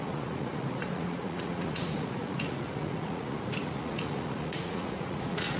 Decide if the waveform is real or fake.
fake